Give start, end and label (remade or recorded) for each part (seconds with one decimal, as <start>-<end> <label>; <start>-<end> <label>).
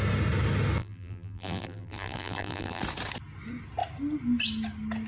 0.0-0.8 recorded; 0.8-2.8 remade; 2.8-5.1 recorded